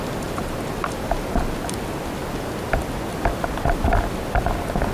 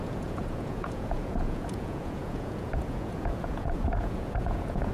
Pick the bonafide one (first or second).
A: first